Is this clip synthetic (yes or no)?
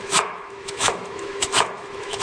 yes